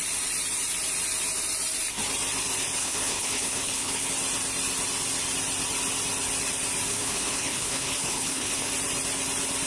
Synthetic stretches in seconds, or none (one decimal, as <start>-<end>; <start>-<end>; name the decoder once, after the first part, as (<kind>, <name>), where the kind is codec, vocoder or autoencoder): 2.8-4.1 (codec, HILCodec); 6.9-8.7